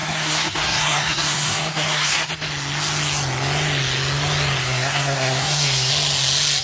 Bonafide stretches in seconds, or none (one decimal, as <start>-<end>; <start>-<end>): 2.3-4.6; 5.9-6.6